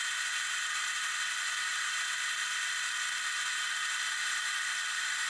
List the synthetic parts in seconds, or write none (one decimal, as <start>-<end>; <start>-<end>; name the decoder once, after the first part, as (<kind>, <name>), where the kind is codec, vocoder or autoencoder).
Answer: none